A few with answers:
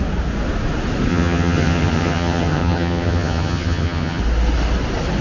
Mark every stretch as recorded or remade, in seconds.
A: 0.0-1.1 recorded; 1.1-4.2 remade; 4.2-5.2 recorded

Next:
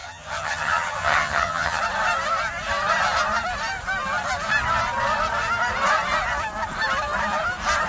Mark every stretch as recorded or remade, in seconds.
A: 0.0-1.8 remade; 1.8-7.9 recorded

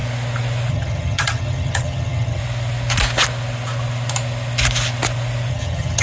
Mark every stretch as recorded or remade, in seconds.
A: 0.0-0.7 recorded; 0.7-2.4 remade; 2.4-5.5 recorded; 5.5-6.0 remade

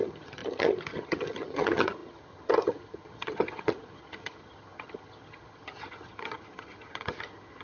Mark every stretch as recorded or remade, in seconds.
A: 0.0-7.6 remade